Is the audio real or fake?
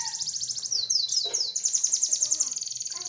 real